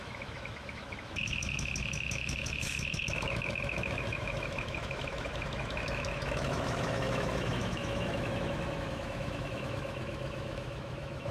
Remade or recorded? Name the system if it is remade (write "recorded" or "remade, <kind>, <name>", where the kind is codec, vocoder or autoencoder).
remade, autoencoder, DAC-VAE